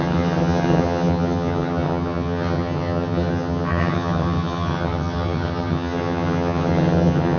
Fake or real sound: fake